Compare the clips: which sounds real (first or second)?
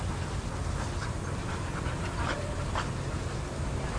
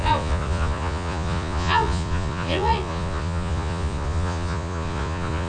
first